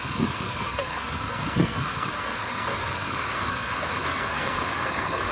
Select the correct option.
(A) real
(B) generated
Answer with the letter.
B